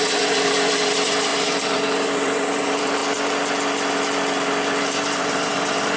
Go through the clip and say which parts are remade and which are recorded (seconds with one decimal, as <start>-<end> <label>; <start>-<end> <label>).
0.0-3.0 remade; 3.0-4.8 recorded; 4.8-6.0 remade